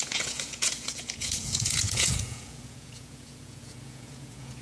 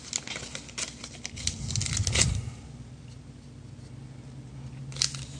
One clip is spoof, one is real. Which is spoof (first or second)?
first